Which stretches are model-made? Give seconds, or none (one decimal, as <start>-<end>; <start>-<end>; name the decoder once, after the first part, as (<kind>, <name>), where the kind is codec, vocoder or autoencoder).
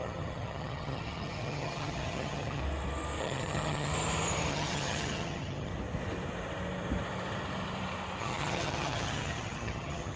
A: 0.0-2.6 (vocoder, HiFi-GAN); 3.2-3.9; 4.5-5.7; 8.2-10.2